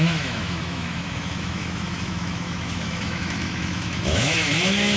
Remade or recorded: remade